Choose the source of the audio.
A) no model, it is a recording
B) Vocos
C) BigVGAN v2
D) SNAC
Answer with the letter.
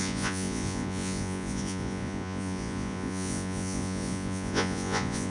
B